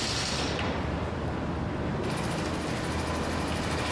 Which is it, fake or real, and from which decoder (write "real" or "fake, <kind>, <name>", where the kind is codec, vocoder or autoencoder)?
real